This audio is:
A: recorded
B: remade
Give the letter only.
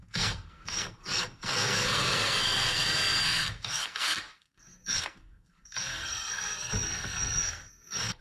B